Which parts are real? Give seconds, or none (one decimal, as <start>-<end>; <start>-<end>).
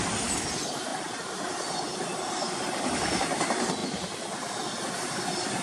0.0-5.6